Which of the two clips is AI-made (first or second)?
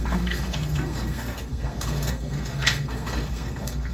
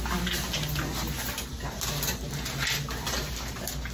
first